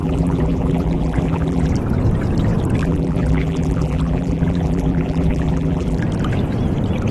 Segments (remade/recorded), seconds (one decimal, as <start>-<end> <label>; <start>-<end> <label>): 0.0-1.7 remade; 1.7-2.8 recorded; 2.8-6.0 remade; 6.0-7.1 recorded